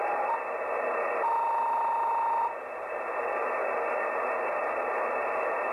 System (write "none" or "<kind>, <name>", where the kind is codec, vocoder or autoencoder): none